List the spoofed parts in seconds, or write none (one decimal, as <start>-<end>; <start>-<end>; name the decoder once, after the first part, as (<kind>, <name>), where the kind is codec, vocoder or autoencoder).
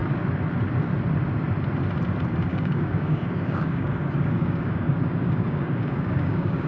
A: 2.5-6.7 (codec, DAC)